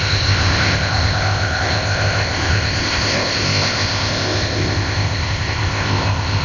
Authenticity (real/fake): fake